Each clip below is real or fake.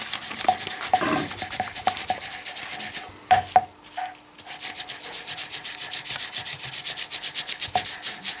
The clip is real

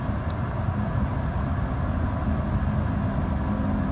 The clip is real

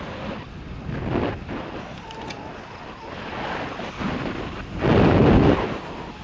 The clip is real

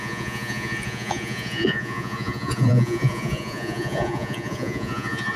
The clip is fake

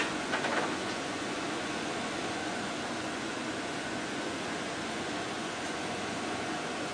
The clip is fake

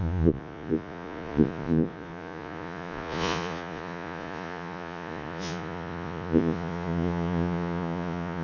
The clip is fake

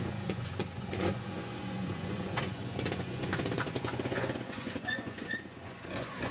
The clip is fake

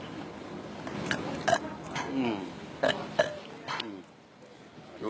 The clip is real